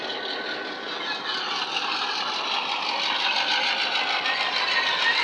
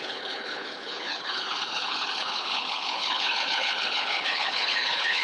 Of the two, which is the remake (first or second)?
second